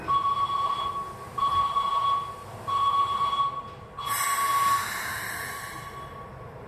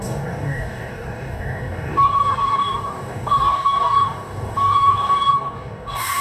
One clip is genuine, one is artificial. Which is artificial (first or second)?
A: second